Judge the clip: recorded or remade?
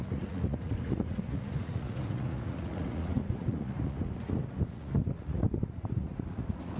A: remade